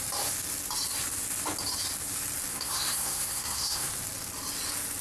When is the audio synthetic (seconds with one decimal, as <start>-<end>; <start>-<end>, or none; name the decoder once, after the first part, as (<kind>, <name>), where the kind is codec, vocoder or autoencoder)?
2.5-3.9 (codec, SNAC)